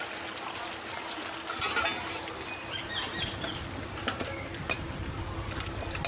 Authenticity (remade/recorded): recorded